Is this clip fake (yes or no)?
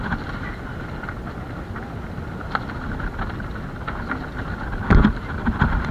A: no